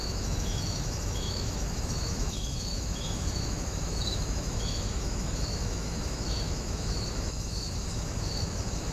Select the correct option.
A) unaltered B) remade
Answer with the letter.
B